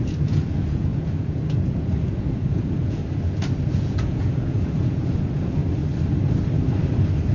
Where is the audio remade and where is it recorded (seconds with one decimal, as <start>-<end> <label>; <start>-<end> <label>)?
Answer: 0.0-3.0 remade; 3.0-3.7 recorded; 3.7-5.6 remade; 5.6-7.3 recorded

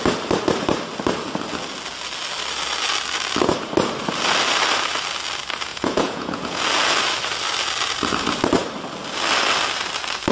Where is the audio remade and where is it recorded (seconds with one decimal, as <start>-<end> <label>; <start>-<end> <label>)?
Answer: 0.0-5.7 recorded; 5.7-6.6 remade; 6.6-10.3 recorded

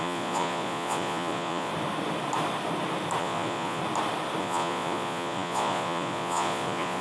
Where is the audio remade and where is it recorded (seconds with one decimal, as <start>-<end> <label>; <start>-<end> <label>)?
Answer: 0.0-1.7 remade; 1.7-3.2 recorded; 3.2-3.8 remade; 3.8-4.4 recorded; 4.4-7.0 remade

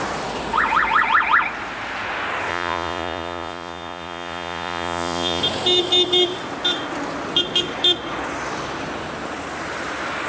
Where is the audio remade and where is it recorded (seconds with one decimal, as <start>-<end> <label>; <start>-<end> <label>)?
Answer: 0.0-2.5 recorded; 2.5-5.4 remade; 5.4-10.3 recorded

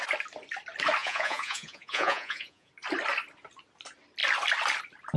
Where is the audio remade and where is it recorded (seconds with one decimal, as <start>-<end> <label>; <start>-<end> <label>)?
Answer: 0.0-1.0 recorded; 1.0-2.7 remade; 2.7-5.2 recorded

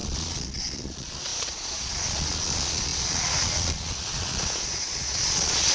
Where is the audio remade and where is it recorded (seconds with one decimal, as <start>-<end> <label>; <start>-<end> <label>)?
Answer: 0.0-5.7 remade